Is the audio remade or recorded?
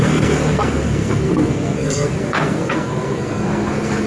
remade